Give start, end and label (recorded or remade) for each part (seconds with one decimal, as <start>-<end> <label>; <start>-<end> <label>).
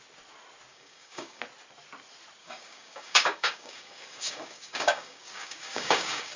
0.0-0.7 recorded; 0.7-1.4 remade; 1.4-2.4 recorded; 2.4-6.4 remade